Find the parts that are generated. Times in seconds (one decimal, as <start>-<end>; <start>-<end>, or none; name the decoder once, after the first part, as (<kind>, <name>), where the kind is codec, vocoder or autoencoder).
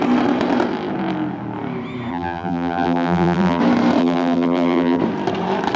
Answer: 2.1-3.6 (vocoder, BigVGAN v2); 4.0-5.0